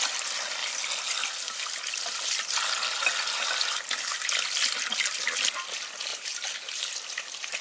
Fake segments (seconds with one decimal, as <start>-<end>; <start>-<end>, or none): 6.1-6.8